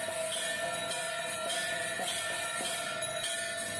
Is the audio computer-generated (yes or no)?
no